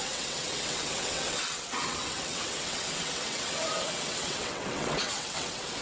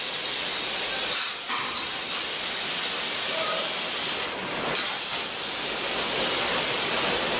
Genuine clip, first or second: second